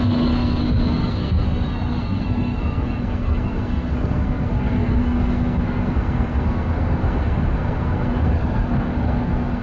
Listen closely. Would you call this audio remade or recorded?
remade